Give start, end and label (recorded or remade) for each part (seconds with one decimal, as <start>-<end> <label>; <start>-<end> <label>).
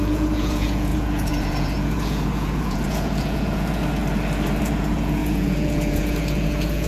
0.0-4.0 remade; 4.0-4.6 recorded; 4.6-6.9 remade